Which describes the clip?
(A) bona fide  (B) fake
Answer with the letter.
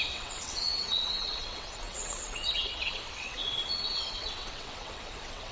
B